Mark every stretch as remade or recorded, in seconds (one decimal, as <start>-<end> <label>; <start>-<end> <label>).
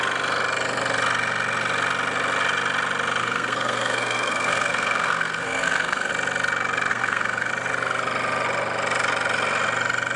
0.0-3.2 recorded; 3.2-6.1 remade; 6.1-6.9 recorded; 6.9-7.5 remade; 7.5-10.2 recorded